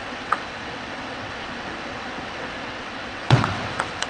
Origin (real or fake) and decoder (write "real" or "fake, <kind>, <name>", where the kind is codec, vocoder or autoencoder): fake, vocoder, WaveNeXt